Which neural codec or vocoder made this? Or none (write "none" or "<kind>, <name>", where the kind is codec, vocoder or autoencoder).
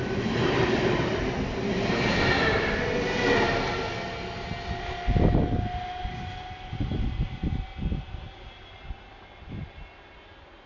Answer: none